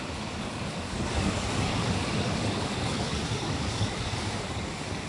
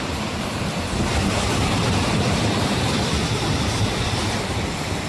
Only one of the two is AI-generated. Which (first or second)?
first